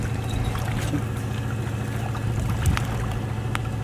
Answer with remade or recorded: recorded